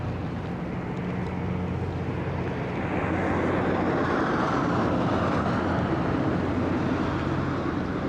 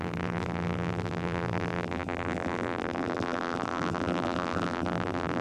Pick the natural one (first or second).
first